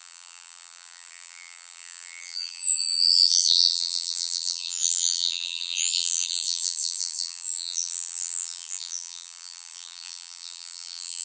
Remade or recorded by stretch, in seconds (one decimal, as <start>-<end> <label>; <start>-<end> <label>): 0.0-11.2 remade